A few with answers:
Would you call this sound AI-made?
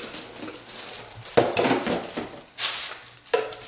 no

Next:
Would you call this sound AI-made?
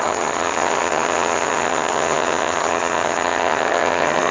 yes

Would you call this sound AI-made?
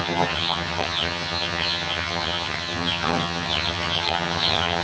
yes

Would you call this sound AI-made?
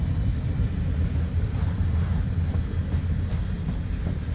no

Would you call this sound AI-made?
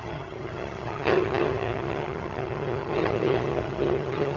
yes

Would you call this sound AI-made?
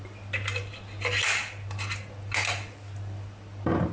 no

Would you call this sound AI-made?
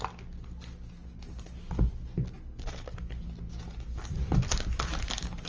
no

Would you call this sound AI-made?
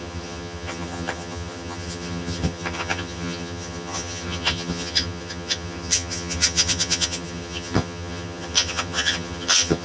yes